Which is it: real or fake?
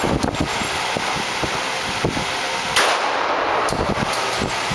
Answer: real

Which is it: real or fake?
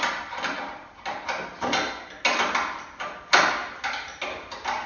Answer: real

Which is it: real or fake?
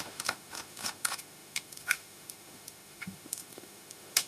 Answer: fake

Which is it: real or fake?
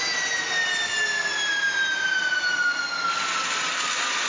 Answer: real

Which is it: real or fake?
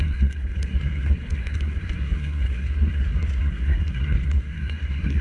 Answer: fake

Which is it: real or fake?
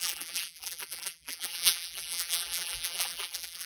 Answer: fake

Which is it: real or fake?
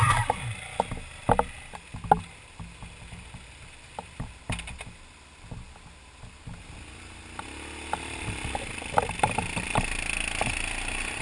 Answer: real